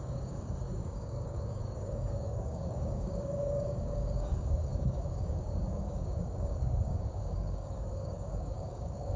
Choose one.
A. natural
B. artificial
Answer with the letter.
B